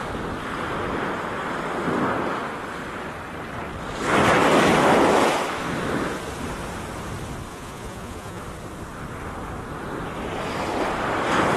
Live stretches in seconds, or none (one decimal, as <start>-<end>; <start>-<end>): 0.0-7.5; 8.4-11.6